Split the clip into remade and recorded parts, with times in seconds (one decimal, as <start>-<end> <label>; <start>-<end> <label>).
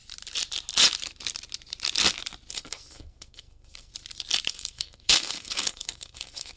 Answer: 0.0-2.5 recorded; 2.5-3.9 remade; 3.9-4.5 recorded; 4.5-6.6 remade